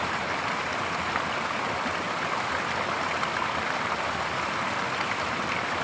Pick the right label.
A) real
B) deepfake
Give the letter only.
A